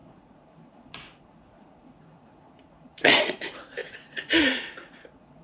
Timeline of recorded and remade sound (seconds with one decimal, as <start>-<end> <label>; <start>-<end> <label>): 0.0-5.4 remade